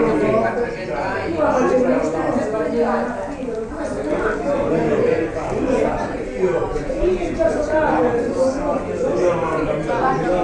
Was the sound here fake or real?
real